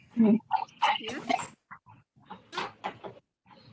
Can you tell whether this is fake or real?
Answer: real